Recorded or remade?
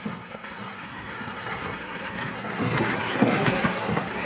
remade